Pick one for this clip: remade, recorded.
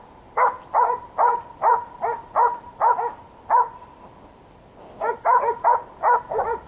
recorded